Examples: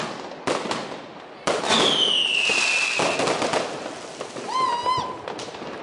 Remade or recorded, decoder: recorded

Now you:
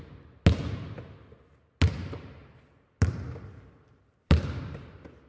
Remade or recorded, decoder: recorded